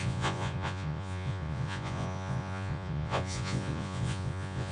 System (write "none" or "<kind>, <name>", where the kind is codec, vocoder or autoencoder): vocoder, Vocos